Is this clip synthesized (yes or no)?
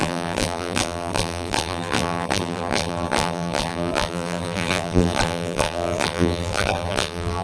yes